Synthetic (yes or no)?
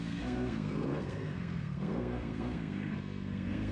yes